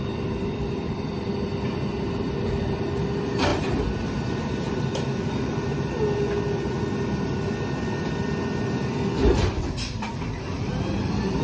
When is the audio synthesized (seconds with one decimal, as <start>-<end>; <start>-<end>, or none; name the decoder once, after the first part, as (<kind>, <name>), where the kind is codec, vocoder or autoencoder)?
0.0-3.5 (vocoder, BigVGAN v2); 8.6-11.4